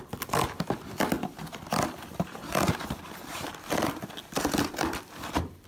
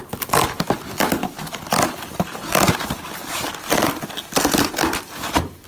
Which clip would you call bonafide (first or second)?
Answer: second